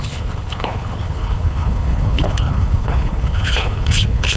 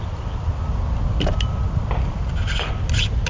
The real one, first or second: second